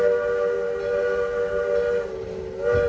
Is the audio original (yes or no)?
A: yes